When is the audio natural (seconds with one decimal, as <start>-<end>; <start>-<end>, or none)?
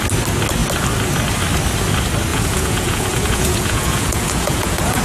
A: 0.0-2.3